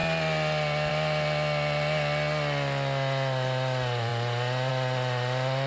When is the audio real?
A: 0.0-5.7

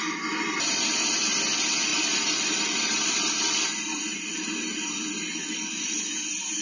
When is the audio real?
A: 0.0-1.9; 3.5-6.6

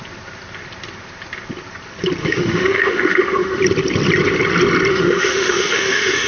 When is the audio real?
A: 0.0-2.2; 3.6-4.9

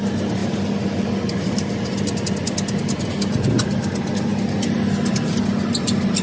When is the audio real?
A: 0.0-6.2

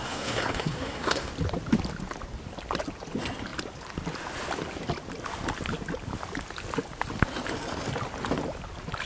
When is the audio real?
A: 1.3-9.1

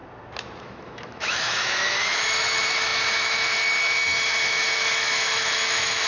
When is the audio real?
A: 0.0-0.6